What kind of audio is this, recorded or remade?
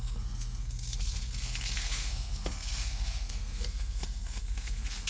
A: remade